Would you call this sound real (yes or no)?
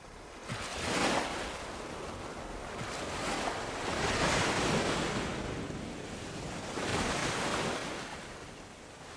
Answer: yes